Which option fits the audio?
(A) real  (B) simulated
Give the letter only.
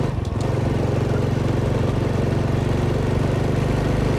A